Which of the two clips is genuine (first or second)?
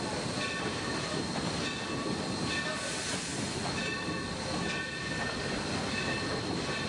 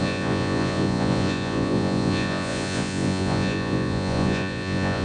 first